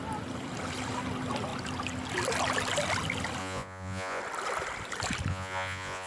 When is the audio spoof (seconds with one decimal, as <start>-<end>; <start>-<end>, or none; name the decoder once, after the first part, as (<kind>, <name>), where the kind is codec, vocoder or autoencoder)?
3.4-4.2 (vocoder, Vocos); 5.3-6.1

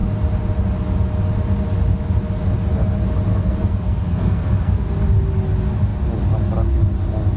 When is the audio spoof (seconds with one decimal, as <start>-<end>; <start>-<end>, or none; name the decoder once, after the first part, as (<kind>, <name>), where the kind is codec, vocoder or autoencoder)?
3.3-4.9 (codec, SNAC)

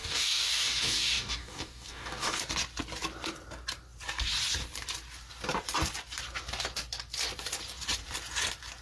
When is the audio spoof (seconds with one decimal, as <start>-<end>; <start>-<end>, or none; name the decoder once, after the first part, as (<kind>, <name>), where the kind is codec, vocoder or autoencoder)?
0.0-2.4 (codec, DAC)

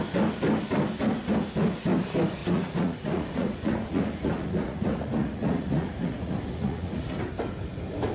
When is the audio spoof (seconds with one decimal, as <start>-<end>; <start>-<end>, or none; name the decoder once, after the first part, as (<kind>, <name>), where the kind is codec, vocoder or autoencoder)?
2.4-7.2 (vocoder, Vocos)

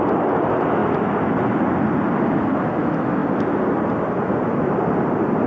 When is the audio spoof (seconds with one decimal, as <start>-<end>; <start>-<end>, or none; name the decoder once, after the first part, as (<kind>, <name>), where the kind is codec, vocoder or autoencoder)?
none